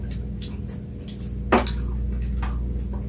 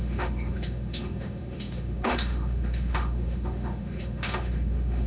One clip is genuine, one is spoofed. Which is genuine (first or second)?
first